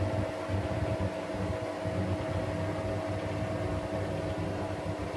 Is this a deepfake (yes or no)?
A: no